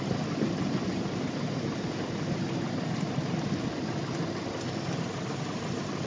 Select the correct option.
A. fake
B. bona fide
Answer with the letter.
B